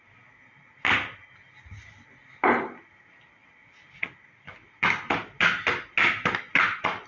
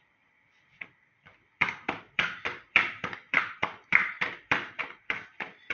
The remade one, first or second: second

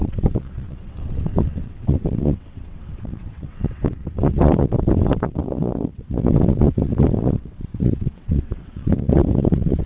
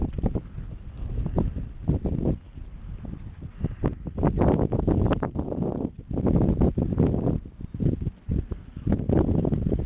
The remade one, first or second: first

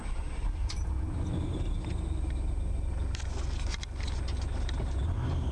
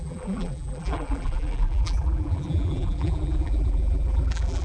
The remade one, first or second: second